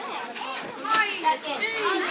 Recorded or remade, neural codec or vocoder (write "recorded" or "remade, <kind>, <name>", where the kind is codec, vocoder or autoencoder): recorded